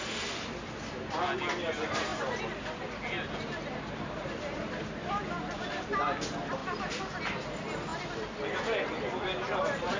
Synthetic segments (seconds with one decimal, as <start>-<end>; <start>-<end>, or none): none